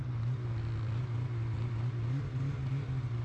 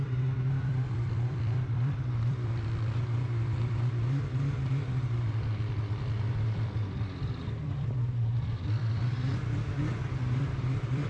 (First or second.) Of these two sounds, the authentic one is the first